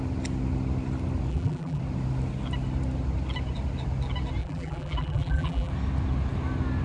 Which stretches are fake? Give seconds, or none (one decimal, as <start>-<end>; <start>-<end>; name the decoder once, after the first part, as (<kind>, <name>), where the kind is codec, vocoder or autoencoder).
1.3-1.8 (vocoder, BigVGAN v2); 4.4-5.7